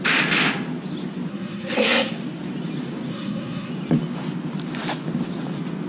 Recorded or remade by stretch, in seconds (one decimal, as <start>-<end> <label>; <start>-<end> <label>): 0.0-1.3 recorded; 1.3-2.1 remade; 2.1-3.1 recorded; 3.1-3.7 remade; 3.7-5.9 recorded